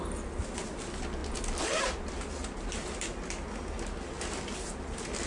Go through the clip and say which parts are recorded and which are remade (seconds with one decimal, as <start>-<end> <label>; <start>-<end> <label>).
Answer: 0.0-5.3 recorded